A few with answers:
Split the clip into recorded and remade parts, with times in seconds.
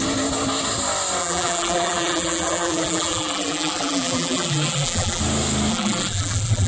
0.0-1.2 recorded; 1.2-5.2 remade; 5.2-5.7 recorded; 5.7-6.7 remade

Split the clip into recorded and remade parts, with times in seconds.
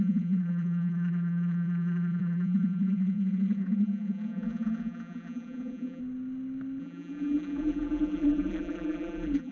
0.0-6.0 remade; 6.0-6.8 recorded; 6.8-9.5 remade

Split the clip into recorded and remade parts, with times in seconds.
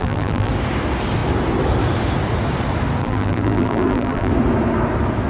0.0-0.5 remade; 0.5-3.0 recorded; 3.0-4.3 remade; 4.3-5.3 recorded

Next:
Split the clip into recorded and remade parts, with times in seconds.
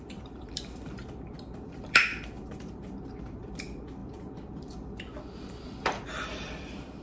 0.0-7.0 remade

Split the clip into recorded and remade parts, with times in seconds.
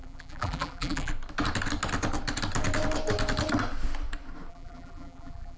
0.0-1.1 remade; 1.1-4.5 recorded; 4.5-5.6 remade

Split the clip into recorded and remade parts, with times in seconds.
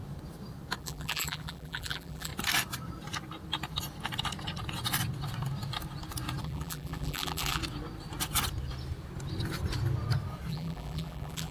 0.0-0.8 recorded; 0.8-2.3 remade; 2.3-6.4 recorded; 6.4-7.6 remade; 7.6-10.5 recorded; 10.5-11.5 remade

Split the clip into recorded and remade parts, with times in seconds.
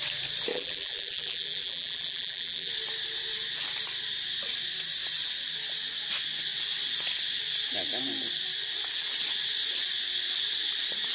0.0-0.5 recorded; 0.5-2.7 remade; 2.7-11.1 recorded